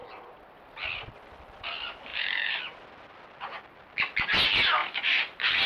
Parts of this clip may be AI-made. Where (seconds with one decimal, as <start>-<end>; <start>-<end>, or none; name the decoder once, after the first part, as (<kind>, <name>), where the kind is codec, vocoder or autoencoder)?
2.1-2.6 (vocoder, BigVGAN v2); 4.8-5.7